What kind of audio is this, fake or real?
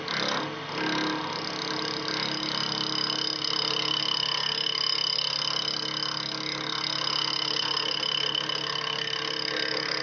real